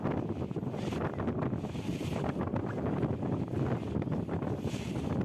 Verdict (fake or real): real